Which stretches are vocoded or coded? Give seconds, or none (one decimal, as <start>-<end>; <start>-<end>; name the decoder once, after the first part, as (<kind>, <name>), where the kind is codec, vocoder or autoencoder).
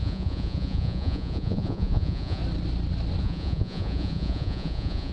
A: 0.0-2.4 (vocoder, Vocos); 3.2-5.1